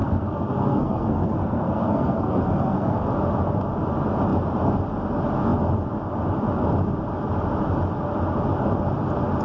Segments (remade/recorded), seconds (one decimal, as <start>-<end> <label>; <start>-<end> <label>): 0.0-3.0 remade; 3.0-9.4 recorded